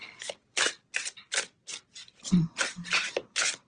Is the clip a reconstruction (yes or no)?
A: no